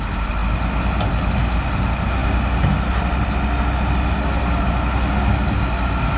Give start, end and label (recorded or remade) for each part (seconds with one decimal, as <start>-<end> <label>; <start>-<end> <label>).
0.0-6.2 recorded